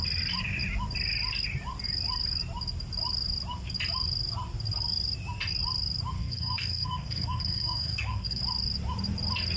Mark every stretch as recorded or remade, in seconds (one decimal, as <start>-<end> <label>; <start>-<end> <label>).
0.0-6.2 recorded; 6.2-8.4 remade; 8.4-9.6 recorded